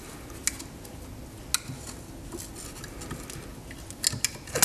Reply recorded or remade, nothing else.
recorded